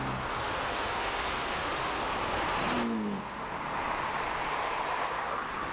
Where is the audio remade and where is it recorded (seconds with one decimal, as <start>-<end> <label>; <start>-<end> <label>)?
0.0-0.4 recorded; 0.4-2.0 remade; 2.0-5.7 recorded